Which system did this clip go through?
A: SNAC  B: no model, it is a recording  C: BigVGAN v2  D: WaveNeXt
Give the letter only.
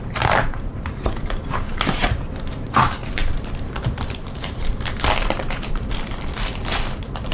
C